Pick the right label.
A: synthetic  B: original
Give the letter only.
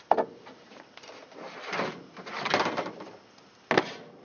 B